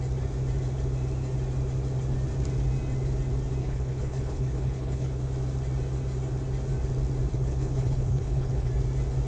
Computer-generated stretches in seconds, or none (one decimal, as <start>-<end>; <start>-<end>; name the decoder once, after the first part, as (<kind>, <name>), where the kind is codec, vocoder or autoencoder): 3.6-5.2 (codec, HILCodec); 7.3-8.7